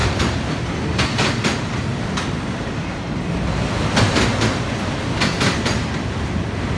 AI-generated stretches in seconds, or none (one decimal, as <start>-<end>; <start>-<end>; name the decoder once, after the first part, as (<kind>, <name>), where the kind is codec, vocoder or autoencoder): 0.0-0.7 (vocoder, BigVGAN v2)